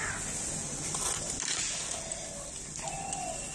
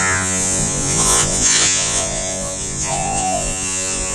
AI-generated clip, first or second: second